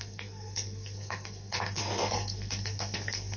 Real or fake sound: fake